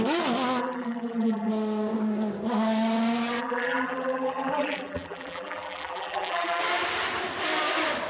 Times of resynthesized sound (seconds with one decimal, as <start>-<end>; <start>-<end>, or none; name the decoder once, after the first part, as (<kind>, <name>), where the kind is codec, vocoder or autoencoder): 0.6-1.5 (vocoder, BigVGAN v2); 3.4-6.6